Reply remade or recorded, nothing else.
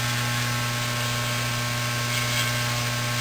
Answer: recorded